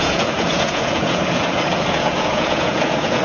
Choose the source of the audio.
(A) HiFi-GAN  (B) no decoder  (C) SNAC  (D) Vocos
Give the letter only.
D